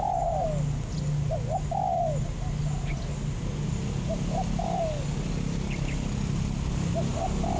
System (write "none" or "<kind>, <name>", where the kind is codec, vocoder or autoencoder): none